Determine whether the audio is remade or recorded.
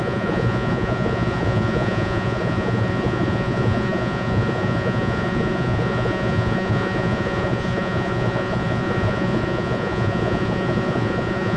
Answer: remade